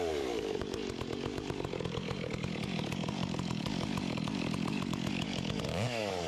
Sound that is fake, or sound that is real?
fake